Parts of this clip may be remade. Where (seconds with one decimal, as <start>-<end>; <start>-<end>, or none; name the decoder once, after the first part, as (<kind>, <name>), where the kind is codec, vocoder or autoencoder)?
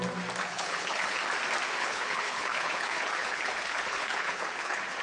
0.4-1.2 (codec, HILCodec); 1.8-5.0